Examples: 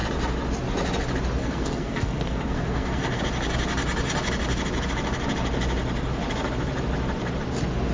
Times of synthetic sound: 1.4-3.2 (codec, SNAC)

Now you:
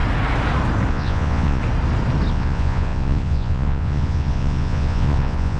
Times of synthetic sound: 0.9-1.6 (vocoder, Vocos); 2.3-5.6

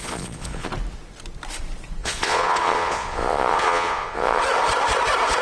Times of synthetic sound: 0.0-0.7 (vocoder, Vocos); 2.0-4.4

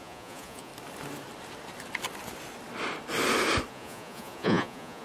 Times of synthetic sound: 0.0-0.7 (vocoder, Vocos); 3.7-5.0

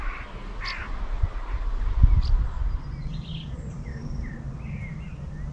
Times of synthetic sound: none

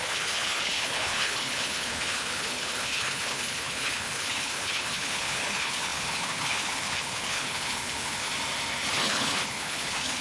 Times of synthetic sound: 0.0-8.3 (codec, HILCodec); 8.9-10.2